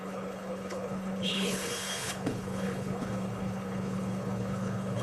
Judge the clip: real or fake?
fake